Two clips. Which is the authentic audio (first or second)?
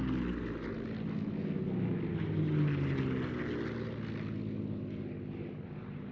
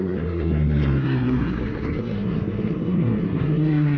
first